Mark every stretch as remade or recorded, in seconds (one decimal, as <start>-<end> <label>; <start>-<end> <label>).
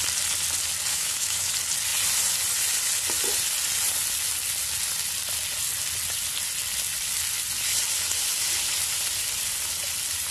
0.0-0.9 recorded; 0.9-1.5 remade; 1.5-10.3 recorded